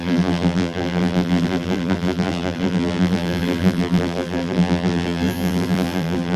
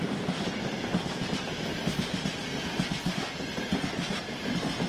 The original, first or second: second